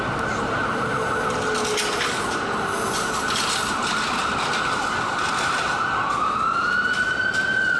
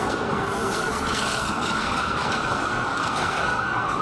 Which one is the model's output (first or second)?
second